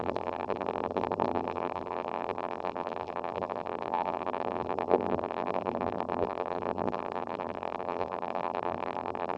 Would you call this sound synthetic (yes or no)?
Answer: yes